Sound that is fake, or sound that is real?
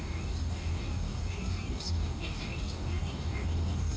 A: fake